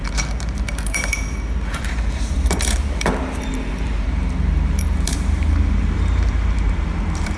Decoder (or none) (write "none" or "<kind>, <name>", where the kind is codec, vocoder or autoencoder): vocoder, BigVGAN v2